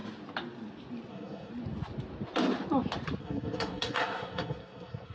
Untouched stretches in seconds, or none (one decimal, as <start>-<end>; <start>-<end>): 0.0-1.1; 1.5-3.2